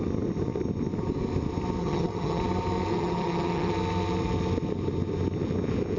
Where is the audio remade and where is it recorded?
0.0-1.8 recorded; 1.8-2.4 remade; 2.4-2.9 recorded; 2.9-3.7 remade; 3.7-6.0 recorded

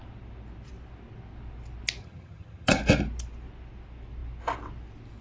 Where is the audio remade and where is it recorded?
0.0-2.0 recorded; 2.0-2.8 remade; 2.8-5.2 recorded

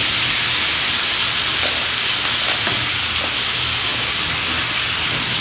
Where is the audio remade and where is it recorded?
0.0-5.4 recorded

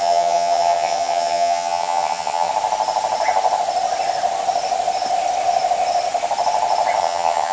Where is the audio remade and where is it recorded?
0.0-2.5 remade; 2.5-7.0 recorded; 7.0-7.5 remade

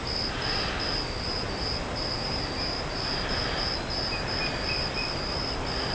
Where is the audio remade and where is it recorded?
0.0-5.9 recorded